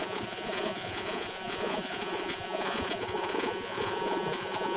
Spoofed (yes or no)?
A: yes